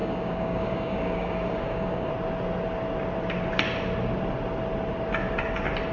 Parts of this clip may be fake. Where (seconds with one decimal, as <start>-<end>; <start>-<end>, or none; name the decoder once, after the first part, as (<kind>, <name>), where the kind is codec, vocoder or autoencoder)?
0.0-2.1 (codec, DAC)